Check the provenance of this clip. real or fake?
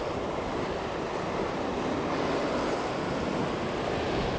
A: real